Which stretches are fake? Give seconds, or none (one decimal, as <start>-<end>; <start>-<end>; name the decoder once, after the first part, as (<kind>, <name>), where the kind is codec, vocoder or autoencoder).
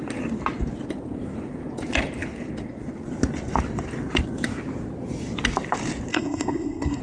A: 6.1-7.0 (codec, SNAC)